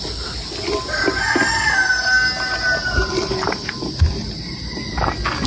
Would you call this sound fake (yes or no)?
no